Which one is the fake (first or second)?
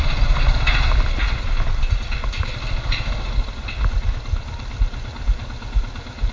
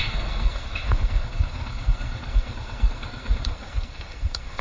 second